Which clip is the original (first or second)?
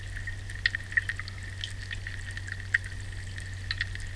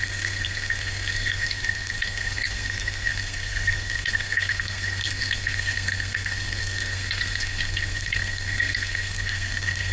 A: first